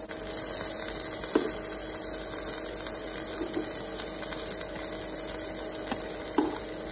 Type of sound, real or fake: real